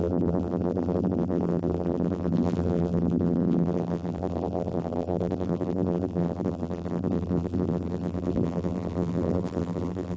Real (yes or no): no